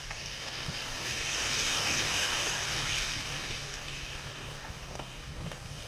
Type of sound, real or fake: fake